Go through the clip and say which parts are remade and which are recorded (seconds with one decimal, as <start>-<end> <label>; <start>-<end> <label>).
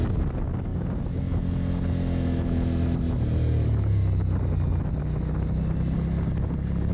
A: 0.0-6.9 recorded